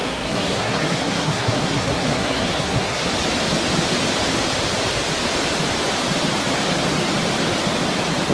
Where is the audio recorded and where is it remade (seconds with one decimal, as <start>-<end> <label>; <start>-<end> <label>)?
0.0-3.1 remade; 3.1-8.3 recorded